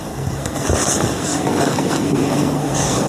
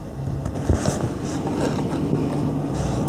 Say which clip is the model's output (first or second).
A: first